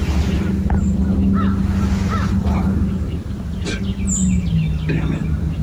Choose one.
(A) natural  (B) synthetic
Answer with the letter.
A